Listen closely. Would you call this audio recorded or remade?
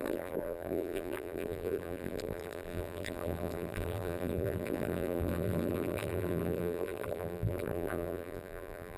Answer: remade